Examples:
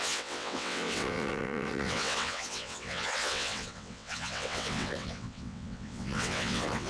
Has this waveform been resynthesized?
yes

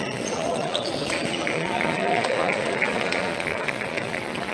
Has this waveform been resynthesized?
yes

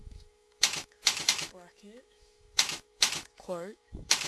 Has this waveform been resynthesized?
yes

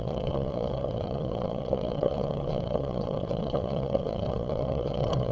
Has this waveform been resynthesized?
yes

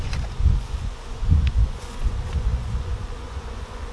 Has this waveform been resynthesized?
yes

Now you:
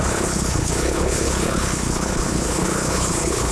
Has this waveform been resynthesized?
yes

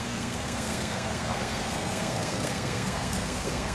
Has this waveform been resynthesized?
yes